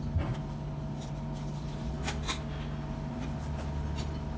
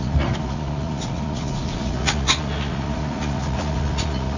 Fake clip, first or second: second